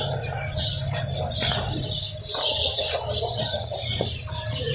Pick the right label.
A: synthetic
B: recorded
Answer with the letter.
B